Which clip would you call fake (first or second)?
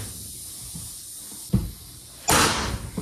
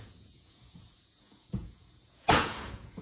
second